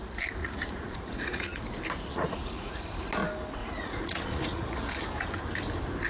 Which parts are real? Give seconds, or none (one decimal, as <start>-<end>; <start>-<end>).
0.0-0.4; 1.6-2.1; 2.8-3.6; 5.0-6.1